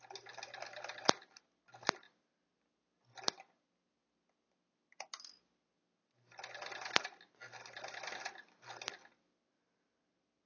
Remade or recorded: recorded